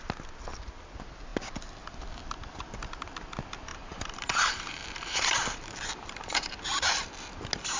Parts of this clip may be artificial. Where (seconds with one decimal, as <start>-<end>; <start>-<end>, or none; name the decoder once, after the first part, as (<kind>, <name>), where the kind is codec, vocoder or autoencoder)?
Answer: 3.7-7.1 (vocoder, BigVGAN v2)